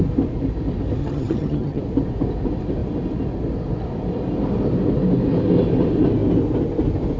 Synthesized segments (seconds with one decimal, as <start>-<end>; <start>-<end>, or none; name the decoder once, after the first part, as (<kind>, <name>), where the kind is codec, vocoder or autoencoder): 1.0-1.8 (vocoder, HiFi-GAN)